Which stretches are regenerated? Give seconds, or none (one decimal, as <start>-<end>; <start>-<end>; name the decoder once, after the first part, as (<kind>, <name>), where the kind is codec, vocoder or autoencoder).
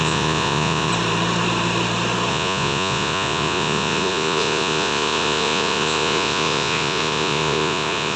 0.0-0.9 (vocoder, Vocos); 2.3-8.2